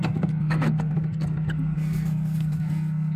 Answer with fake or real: fake